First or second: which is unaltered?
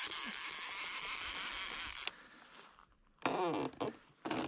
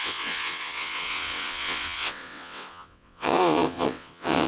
first